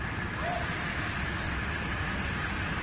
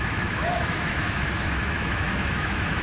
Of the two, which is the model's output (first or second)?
second